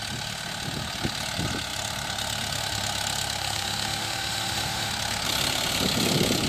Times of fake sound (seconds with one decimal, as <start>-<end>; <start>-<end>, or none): 3.4-4.9